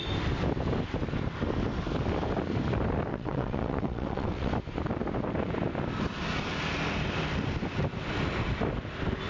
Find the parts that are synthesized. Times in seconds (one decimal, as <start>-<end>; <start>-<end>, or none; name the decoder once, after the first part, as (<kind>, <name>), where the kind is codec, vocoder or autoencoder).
3.1-4.5 (vocoder, WaveNeXt)